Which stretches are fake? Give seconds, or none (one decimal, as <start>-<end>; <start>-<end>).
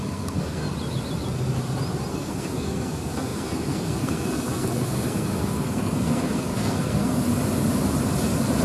0.0-0.6; 2.1-7.2